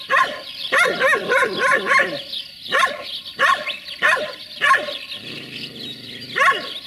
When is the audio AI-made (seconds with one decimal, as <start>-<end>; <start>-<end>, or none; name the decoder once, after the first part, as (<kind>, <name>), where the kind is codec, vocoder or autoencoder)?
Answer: none

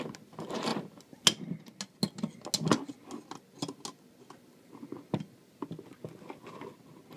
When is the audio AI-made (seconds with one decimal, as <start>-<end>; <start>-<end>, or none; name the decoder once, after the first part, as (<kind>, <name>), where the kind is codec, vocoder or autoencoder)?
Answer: none

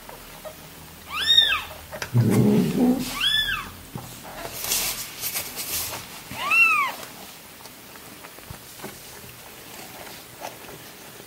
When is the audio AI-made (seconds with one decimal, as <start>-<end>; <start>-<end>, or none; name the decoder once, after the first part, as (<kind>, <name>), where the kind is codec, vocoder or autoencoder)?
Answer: 4.3-6.2 (vocoder, BigVGAN v2)

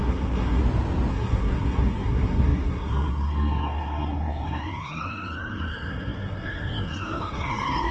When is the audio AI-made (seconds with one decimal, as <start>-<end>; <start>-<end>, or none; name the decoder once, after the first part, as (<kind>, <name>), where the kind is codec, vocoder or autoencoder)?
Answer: 0.0-0.6 (codec, SNAC); 1.1-7.9

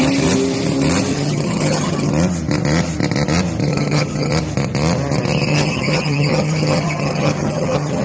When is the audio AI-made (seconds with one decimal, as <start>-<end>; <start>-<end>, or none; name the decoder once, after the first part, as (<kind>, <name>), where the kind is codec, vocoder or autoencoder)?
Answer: 1.1-2.1 (vocoder, HiFi-GAN); 3.7-4.3; 5.5-8.0

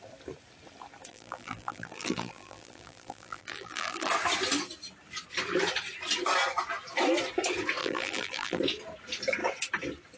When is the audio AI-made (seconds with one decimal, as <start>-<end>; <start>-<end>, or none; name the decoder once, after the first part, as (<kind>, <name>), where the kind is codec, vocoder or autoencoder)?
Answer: 1.1-4.1 (vocoder, BigVGAN v2); 7.8-8.6

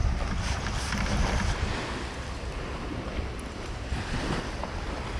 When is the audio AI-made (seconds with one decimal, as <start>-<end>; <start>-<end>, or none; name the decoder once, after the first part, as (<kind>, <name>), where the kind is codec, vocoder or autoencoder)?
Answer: none